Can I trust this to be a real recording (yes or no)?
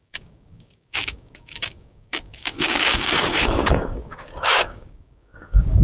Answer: no